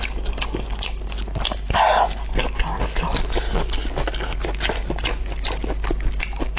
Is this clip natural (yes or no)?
yes